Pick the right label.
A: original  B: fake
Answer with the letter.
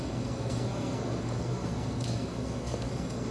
B